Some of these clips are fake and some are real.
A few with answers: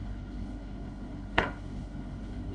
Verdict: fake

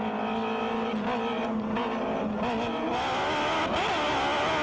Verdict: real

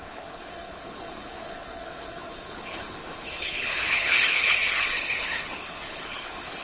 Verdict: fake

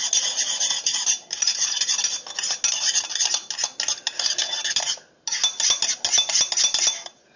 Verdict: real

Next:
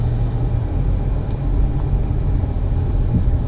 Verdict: real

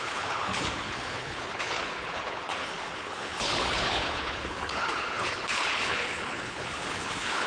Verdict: fake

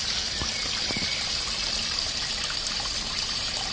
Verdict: real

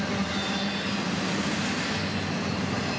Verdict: real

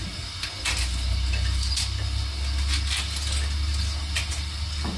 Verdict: real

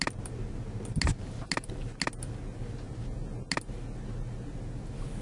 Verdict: real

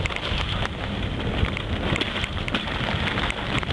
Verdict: real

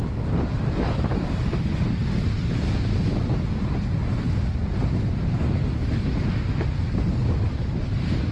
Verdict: real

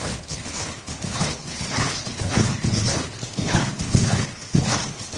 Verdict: fake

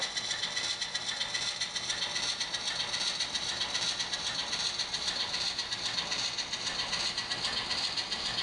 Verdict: real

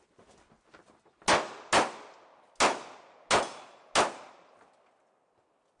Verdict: real